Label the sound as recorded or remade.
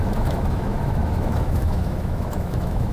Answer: remade